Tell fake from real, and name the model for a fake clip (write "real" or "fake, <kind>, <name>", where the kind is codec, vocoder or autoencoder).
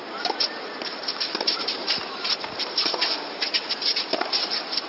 real